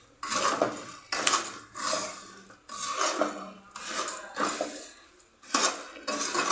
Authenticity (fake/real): real